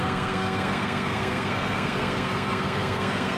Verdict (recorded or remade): remade